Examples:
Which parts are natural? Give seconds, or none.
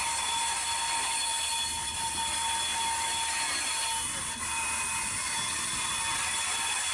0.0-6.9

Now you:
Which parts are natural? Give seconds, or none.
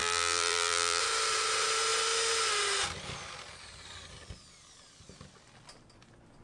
1.0-6.4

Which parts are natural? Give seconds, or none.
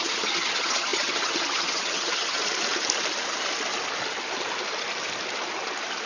2.4-6.1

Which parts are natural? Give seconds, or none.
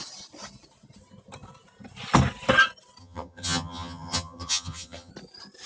0.0-3.0; 5.1-5.7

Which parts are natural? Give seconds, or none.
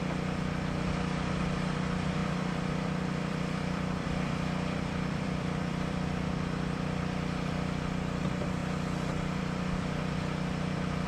0.0-2.2; 7.0-11.1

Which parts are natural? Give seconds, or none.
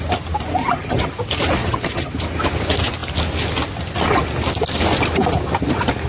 0.0-0.6; 1.1-1.6; 2.1-6.1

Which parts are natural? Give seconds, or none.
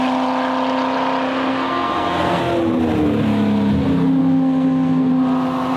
0.0-1.5; 2.4-4.2; 5.1-5.8